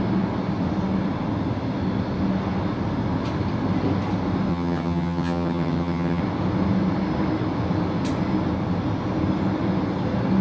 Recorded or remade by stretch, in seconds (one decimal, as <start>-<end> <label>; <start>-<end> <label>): 0.0-4.5 recorded; 4.5-6.2 remade; 6.2-10.4 recorded